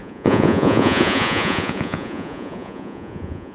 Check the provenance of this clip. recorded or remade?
remade